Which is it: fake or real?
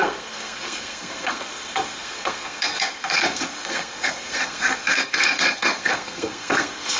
fake